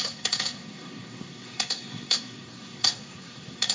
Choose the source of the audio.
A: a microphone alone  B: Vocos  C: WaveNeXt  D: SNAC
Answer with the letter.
D